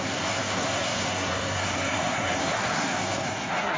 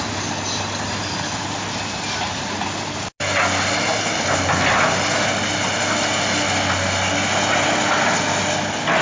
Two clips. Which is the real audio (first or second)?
second